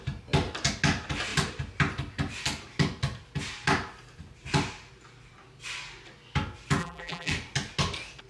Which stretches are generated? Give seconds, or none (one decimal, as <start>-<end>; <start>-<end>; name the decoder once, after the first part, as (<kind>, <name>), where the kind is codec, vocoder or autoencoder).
6.8-7.3 (vocoder, BigVGAN v2)

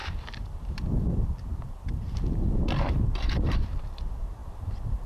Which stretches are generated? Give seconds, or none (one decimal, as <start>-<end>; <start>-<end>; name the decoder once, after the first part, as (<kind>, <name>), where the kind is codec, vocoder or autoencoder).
0.0-5.1 (vocoder, BigVGAN v2)

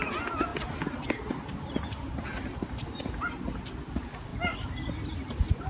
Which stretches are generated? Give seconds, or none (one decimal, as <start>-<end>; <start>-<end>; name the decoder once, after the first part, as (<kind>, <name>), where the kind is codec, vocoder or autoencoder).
none

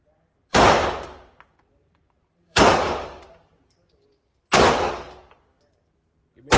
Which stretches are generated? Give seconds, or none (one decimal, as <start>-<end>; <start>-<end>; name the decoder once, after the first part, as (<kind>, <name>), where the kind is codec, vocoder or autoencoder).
0.5-3.6 (vocoder, BigVGAN v2)

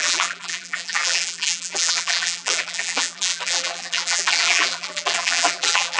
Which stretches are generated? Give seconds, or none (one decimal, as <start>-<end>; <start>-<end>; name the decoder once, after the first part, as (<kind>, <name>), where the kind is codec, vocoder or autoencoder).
0.0-6.0 (vocoder, BigVGAN v2)

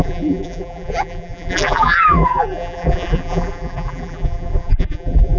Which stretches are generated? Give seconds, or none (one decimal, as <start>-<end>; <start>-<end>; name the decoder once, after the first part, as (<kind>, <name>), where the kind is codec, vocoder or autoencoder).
0.0-5.4 (vocoder, BigVGAN v2)